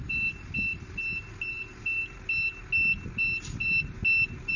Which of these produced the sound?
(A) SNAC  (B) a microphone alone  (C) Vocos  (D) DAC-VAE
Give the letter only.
B